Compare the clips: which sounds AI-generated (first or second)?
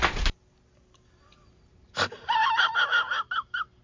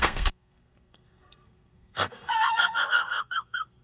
second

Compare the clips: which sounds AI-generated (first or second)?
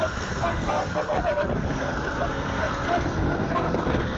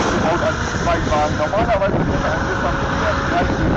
first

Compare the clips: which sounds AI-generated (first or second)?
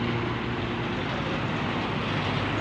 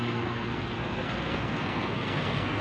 second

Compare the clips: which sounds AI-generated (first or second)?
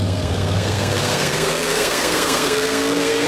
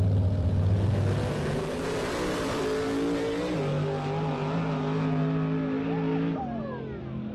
first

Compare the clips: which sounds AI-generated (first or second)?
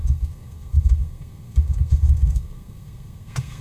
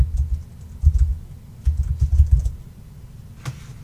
first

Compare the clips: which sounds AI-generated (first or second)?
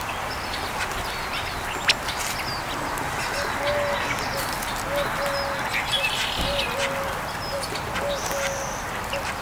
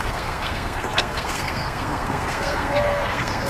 second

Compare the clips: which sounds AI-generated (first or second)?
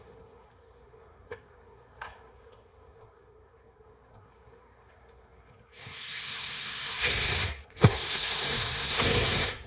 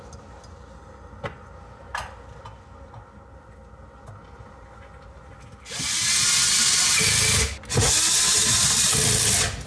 first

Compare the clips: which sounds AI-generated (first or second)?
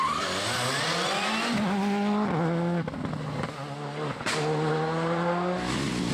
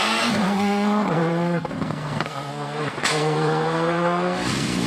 second